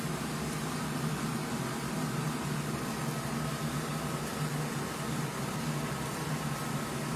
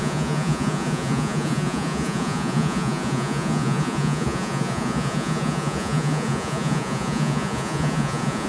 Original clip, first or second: first